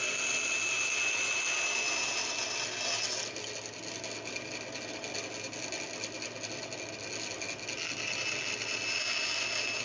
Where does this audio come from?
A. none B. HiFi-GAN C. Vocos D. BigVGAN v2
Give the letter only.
A